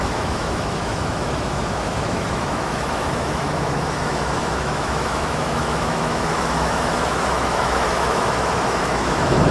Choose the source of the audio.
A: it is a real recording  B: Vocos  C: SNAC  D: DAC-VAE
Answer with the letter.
D